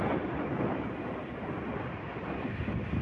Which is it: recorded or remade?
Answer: recorded